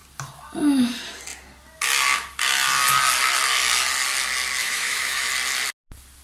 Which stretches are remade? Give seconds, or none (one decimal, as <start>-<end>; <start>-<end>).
4.6-5.3